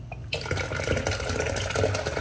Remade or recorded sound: recorded